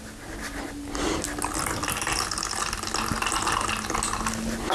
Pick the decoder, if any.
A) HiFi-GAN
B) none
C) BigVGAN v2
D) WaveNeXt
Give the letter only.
B